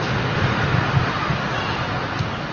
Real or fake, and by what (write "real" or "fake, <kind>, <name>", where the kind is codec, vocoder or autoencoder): real